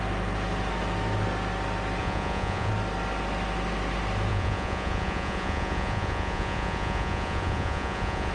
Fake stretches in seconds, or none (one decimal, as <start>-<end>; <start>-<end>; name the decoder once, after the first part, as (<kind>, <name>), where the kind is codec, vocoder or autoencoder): 2.0-2.7 (vocoder, Vocos); 4.3-8.3